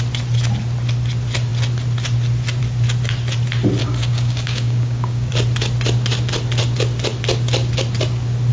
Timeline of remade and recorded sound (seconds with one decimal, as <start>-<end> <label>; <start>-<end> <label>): 0.0-3.8 recorded; 3.8-5.3 remade; 5.3-8.5 recorded